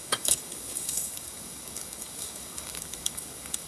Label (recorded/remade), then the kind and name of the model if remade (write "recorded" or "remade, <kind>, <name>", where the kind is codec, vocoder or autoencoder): remade, codec, DAC